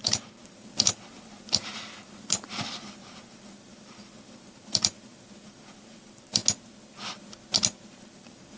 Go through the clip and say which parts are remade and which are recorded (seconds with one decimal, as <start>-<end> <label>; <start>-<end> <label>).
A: 0.0-6.4 remade; 6.4-7.9 recorded; 7.9-8.6 remade